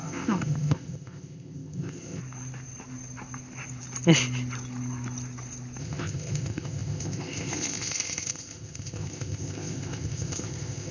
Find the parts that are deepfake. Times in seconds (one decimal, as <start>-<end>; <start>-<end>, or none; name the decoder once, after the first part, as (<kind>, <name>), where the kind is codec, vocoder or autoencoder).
0.0-2.2 (codec, ZipCodec); 5.8-10.9